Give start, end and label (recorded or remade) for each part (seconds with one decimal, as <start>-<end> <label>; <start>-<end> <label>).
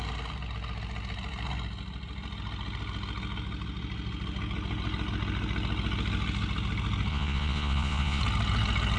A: 0.0-7.1 recorded; 7.1-8.2 remade; 8.2-9.0 recorded